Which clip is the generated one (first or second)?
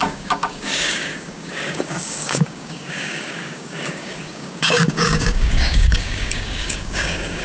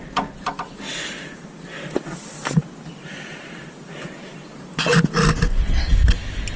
first